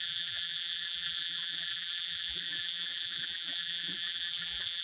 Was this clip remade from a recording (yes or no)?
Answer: yes